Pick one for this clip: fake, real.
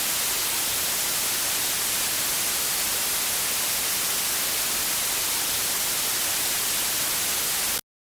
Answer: real